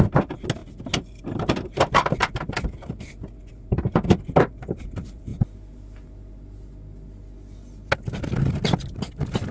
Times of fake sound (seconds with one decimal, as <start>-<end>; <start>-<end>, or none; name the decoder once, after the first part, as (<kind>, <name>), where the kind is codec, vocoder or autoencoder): none